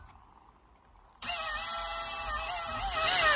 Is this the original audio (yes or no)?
yes